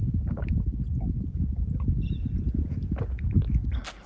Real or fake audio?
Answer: real